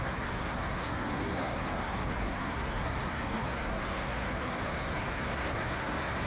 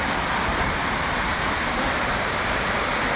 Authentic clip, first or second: second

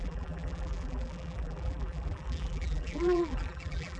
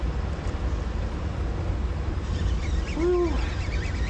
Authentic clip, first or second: second